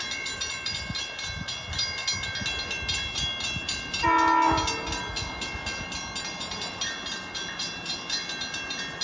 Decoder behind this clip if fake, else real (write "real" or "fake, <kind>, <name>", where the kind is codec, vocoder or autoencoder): real